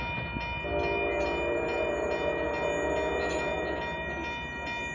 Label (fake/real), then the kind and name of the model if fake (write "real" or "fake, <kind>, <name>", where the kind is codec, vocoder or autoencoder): real